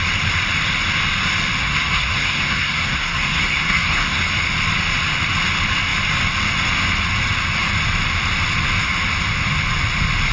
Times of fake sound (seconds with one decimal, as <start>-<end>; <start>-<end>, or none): 1.6-4.2